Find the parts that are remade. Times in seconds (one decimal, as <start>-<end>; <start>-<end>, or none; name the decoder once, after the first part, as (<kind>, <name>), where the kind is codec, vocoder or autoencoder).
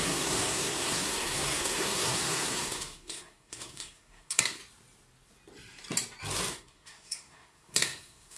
0.0-4.6 (codec, SNAC); 6.5-8.4